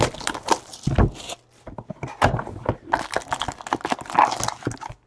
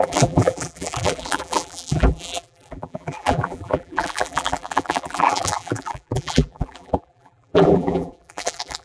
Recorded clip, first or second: first